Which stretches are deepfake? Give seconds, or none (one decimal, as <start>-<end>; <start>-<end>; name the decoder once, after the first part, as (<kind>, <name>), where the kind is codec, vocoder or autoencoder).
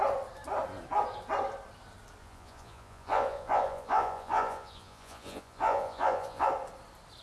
2.2-6.5 (vocoder, Vocos)